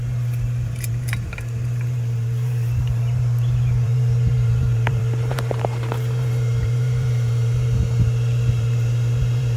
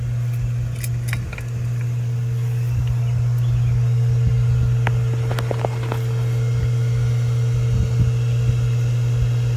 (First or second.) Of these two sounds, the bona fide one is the second